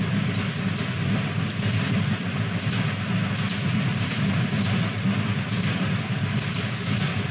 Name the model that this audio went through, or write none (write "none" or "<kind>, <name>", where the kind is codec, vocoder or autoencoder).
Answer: none